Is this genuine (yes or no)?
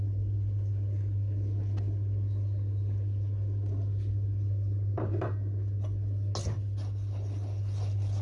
yes